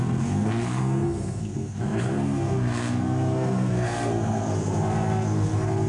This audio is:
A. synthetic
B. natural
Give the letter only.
A